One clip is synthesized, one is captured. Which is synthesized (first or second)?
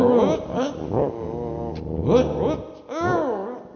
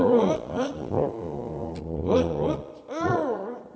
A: second